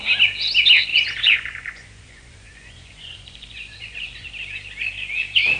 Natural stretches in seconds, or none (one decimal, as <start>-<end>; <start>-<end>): 0.0-0.9; 4.3-5.6